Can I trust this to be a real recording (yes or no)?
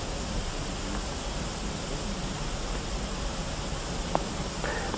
yes